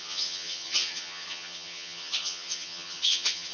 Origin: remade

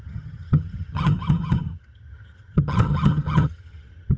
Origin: remade